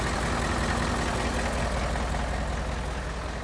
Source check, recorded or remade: recorded